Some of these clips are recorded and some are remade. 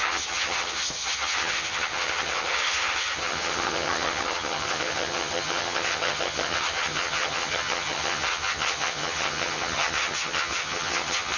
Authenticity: remade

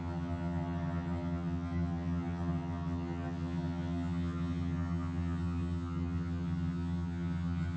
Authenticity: remade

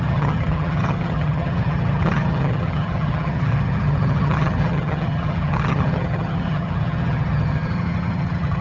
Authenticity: remade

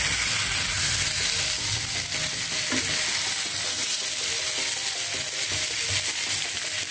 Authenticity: recorded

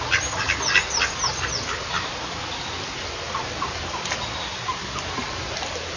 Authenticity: recorded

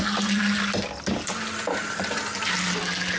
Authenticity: recorded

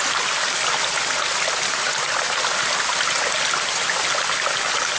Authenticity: recorded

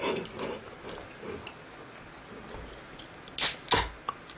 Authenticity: recorded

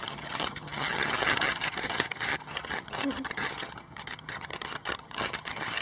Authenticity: remade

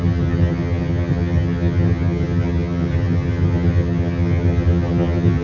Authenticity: remade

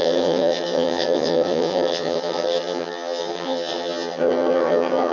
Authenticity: remade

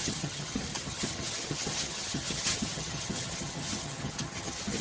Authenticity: remade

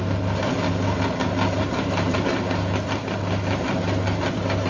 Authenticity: recorded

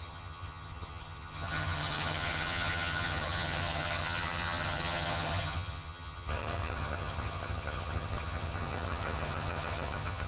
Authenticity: remade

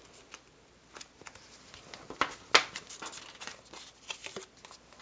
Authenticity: recorded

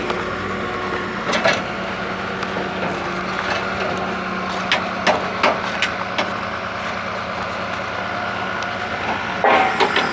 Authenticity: recorded